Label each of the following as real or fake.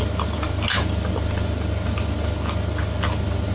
real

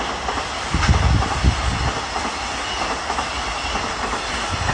real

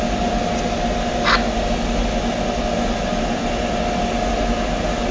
real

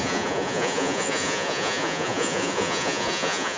fake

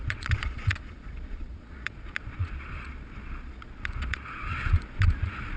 fake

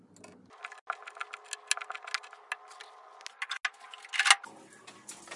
real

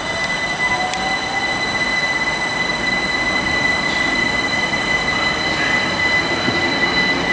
real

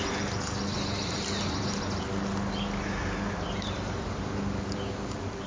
real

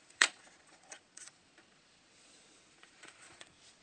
fake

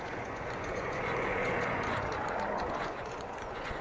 fake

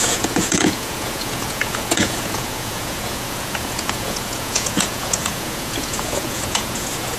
fake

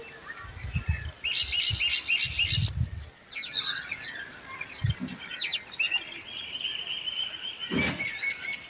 real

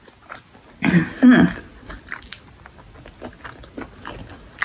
real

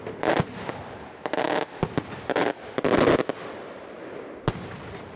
real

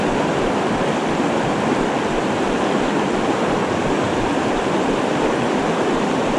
real